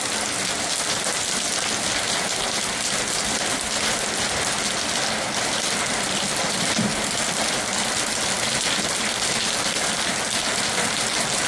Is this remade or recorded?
recorded